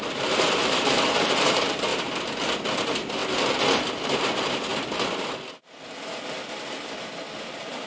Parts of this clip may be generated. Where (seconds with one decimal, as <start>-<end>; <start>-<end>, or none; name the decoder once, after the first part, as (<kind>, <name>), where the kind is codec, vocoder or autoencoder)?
0.0-1.9 (vocoder, BigVGAN v2); 2.8-3.2; 3.9-4.7; 7.4-7.9